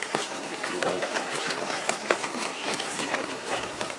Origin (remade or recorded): remade